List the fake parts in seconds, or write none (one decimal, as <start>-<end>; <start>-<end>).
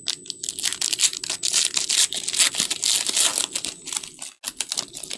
none